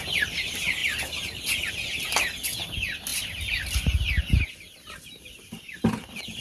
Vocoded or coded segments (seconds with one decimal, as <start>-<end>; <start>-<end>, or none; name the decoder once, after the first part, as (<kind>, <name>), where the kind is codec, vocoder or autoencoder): none